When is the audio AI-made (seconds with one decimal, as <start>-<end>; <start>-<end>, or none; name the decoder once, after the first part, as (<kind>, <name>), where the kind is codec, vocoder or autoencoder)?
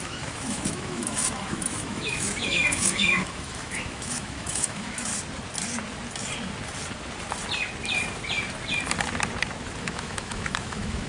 0.0-5.1 (autoencoder, DAC-VAE); 9.8-11.1